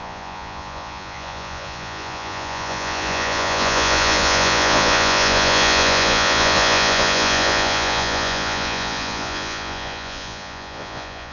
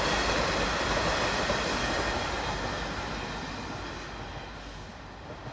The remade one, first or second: first